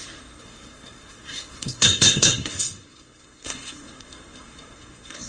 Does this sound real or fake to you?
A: fake